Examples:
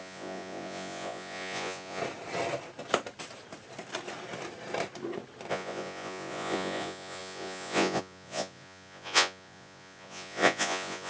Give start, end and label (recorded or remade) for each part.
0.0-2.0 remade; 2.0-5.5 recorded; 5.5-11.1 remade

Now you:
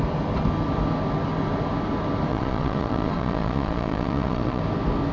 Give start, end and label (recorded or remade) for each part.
0.0-2.3 recorded; 2.3-4.6 remade; 4.6-5.1 recorded

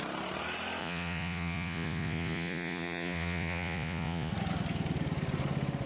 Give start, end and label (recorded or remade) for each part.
0.0-0.8 recorded; 0.8-4.3 remade; 4.3-5.9 recorded